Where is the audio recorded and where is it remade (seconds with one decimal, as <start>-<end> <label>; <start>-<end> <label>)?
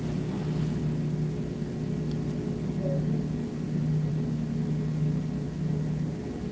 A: 0.0-6.5 recorded